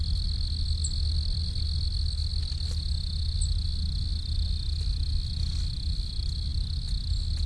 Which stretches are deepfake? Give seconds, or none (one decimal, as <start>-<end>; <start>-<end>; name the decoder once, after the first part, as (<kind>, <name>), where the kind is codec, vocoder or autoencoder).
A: none